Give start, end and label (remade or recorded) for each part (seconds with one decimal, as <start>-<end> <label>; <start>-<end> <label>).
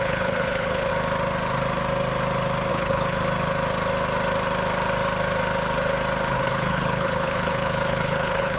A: 0.0-0.9 remade; 0.9-2.7 recorded; 2.7-3.2 remade; 3.2-6.3 recorded; 6.3-8.6 remade